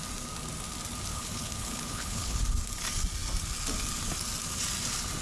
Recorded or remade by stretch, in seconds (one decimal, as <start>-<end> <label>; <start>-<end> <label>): 0.0-1.1 recorded; 1.1-2.4 remade; 2.4-5.2 recorded

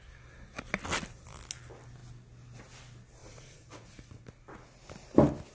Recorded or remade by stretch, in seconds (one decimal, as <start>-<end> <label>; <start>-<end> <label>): 0.0-3.2 recorded; 3.2-4.2 remade; 4.2-5.5 recorded

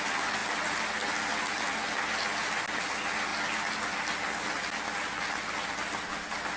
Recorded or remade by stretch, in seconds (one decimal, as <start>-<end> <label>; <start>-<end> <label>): 0.0-3.3 recorded; 3.3-6.6 remade

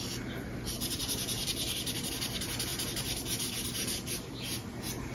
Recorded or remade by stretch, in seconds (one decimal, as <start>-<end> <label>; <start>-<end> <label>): 0.0-1.0 recorded; 1.0-1.5 remade; 1.5-5.1 recorded

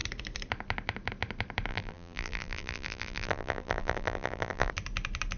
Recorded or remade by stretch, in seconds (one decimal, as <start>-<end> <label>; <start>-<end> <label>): 0.0-1.7 recorded; 1.7-4.7 remade; 4.7-5.4 recorded

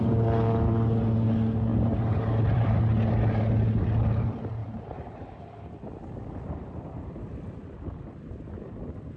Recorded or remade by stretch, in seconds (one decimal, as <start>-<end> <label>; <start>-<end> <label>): 0.0-1.7 recorded; 1.7-2.8 remade; 2.8-4.6 recorded; 4.6-5.4 remade; 5.4-9.2 recorded